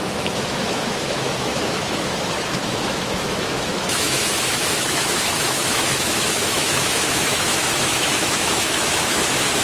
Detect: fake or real fake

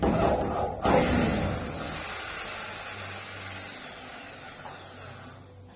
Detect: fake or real real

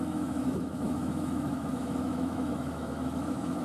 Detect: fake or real fake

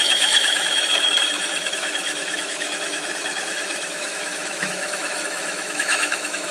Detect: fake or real fake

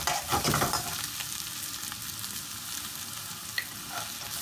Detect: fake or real real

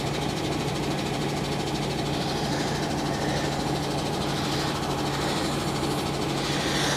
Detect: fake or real real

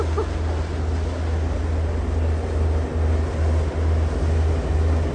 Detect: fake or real real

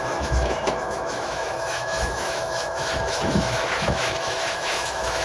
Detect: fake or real fake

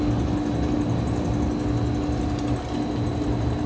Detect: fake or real real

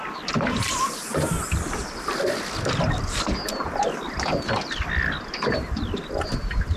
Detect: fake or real real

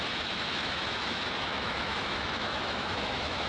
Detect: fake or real fake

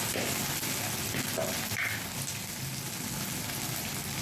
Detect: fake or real real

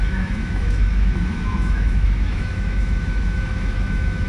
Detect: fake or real fake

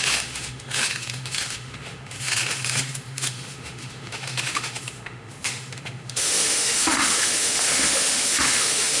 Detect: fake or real fake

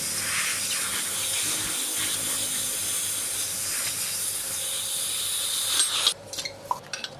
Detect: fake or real real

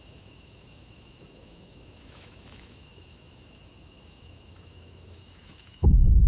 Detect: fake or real fake